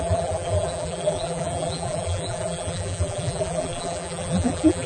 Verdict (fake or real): fake